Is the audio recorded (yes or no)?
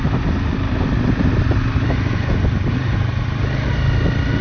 yes